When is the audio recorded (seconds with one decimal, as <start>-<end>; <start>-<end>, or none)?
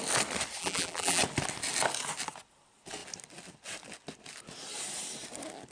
0.0-0.6; 1.2-5.7